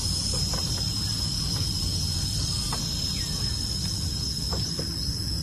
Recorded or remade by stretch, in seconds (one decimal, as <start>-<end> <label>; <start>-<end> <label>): 0.0-5.4 recorded